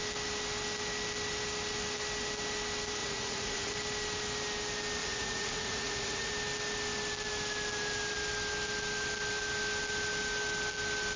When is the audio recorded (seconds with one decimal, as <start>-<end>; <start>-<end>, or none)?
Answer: 0.0-3.0; 3.7-5.0; 6.3-11.2